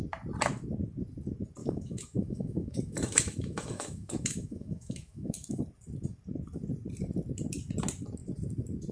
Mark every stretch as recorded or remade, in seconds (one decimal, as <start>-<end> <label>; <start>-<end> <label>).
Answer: 0.0-1.6 recorded; 1.6-5.6 remade; 5.6-8.9 recorded